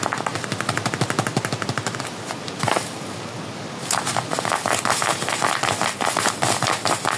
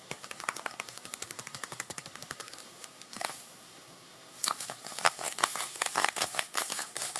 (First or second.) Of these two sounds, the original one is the first